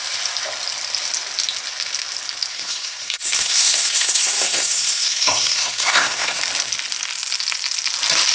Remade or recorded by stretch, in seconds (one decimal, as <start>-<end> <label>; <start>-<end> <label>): 0.0-2.5 recorded; 2.5-6.4 remade; 6.4-8.3 recorded